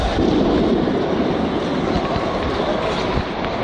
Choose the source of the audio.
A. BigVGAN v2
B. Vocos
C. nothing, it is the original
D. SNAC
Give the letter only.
C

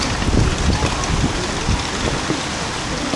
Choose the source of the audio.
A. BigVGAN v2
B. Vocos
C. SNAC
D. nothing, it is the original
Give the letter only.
D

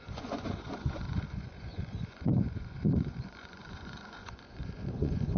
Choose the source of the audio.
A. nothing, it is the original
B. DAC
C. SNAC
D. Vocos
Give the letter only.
D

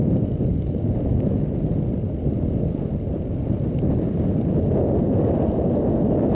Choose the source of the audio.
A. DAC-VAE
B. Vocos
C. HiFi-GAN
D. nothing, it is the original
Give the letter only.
D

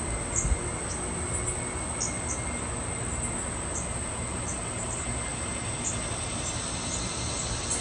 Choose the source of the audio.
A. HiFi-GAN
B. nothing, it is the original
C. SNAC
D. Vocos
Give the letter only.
B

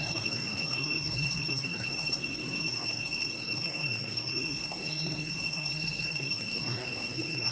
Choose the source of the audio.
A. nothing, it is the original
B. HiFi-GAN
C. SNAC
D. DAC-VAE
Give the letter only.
C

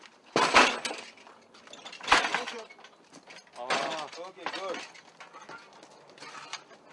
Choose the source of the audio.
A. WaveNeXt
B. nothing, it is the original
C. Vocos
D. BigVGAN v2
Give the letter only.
B